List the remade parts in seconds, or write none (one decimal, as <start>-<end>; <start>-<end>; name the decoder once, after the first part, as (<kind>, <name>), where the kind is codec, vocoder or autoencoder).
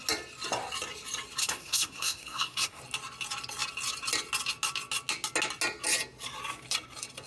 1.4-2.8 (codec, SNAC)